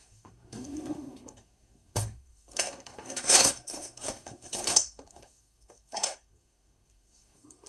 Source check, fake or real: fake